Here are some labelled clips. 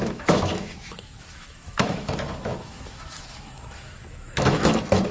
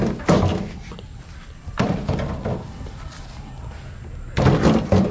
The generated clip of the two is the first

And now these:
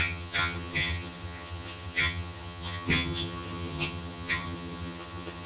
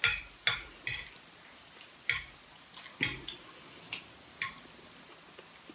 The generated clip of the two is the first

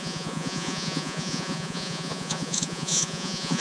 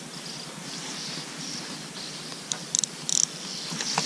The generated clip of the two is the first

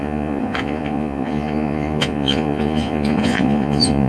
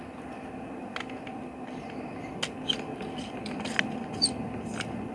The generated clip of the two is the first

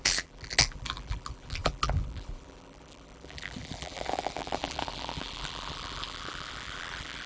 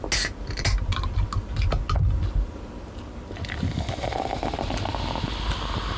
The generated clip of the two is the first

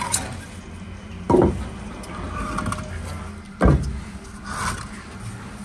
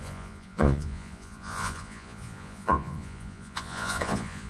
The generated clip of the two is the second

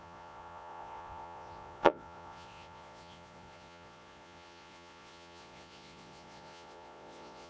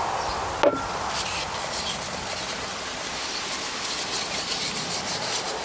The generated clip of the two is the first